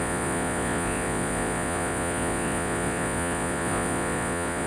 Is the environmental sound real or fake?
fake